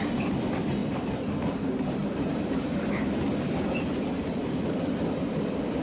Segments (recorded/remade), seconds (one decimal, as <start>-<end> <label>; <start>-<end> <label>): 0.0-0.8 recorded; 0.8-1.4 remade; 1.4-5.8 recorded